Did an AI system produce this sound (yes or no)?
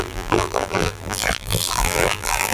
yes